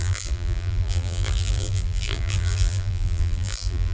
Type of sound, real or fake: fake